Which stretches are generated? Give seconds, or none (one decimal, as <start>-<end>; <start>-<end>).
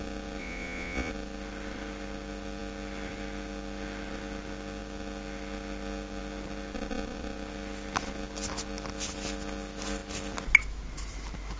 0.4-1.1